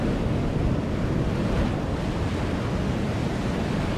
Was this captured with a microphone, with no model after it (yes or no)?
yes